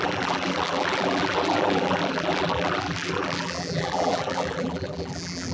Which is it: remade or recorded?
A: remade